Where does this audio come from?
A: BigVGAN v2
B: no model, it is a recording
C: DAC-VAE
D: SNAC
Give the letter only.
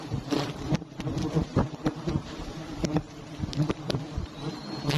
A